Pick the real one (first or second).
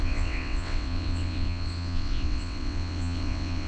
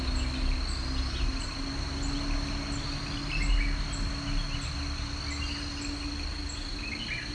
second